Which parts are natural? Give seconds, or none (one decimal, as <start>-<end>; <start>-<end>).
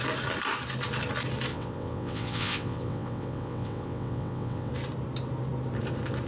0.0-1.5; 4.7-6.3